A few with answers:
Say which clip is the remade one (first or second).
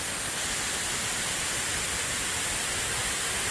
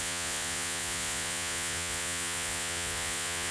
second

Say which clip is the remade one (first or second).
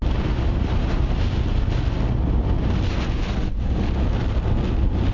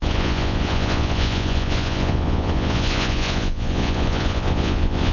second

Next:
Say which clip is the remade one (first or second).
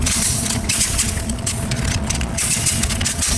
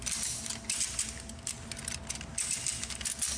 first